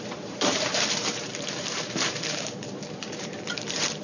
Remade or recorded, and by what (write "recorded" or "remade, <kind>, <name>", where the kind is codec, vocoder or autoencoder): remade, vocoder, BigVGAN v2